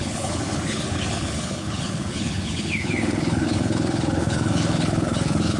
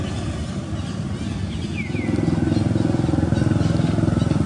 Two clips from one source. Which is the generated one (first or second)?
first